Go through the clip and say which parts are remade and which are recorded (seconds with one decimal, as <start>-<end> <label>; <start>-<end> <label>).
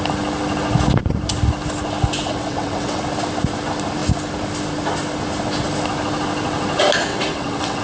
0.0-2.3 recorded; 2.3-3.0 remade; 3.0-7.1 recorded; 7.1-7.8 remade